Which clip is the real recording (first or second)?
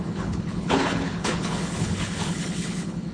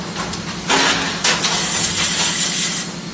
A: second